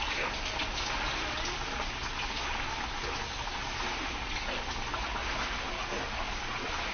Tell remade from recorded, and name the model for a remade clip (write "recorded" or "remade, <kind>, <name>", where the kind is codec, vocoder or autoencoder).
recorded